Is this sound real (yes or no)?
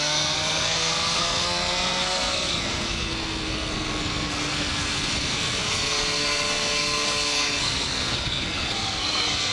no